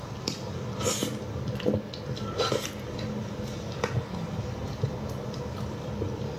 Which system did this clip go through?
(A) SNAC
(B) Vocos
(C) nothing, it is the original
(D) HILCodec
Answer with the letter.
C